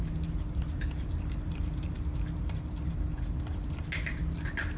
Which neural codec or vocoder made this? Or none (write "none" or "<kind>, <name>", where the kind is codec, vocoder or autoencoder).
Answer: none